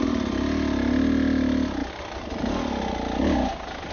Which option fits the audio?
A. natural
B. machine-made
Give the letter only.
A